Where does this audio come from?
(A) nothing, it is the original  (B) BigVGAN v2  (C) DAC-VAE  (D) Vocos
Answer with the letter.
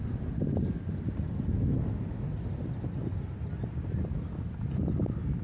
A